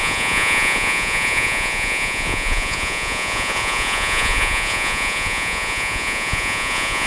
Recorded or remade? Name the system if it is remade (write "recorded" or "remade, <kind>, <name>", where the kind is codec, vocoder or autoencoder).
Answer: remade, vocoder, Vocos